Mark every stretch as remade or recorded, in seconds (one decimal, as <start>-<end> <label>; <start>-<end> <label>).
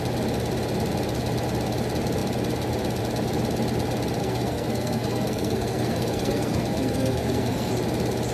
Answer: 0.0-4.2 recorded; 4.2-7.7 remade; 7.7-8.3 recorded